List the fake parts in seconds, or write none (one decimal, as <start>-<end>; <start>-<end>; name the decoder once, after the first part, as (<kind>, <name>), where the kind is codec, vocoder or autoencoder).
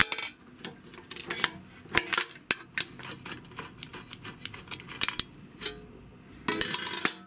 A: none